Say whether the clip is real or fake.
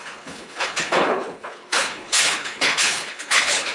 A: fake